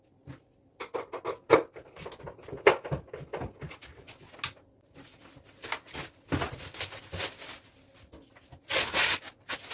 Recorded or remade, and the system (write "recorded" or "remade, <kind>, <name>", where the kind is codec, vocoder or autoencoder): recorded